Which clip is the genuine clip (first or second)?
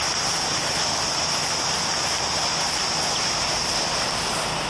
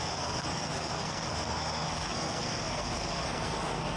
first